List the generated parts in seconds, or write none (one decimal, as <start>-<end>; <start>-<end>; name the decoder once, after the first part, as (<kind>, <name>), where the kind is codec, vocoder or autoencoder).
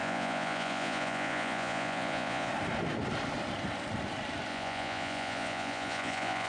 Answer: 0.0-2.5 (vocoder, Vocos); 4.5-6.5